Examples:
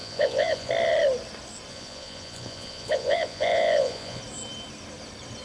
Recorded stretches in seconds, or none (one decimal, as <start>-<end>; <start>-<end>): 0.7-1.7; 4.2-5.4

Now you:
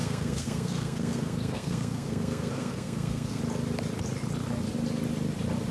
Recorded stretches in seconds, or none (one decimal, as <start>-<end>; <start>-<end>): 3.4-5.7

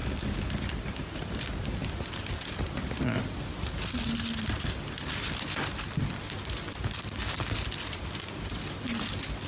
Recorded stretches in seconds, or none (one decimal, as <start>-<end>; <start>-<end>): 0.0-9.5

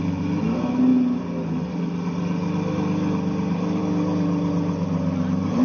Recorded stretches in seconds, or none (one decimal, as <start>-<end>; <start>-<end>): 0.0-5.6

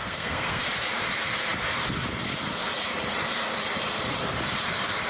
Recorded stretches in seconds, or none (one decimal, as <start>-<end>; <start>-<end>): 0.6-5.1

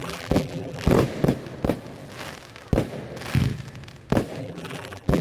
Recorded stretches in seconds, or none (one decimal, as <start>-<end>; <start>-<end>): 0.9-4.4

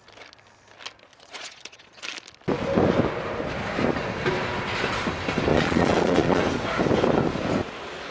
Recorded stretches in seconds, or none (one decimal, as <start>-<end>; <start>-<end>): 0.0-1.1; 2.0-5.5; 6.4-8.1